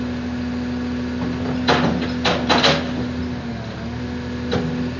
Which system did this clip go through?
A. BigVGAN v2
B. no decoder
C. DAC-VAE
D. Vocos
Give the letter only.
B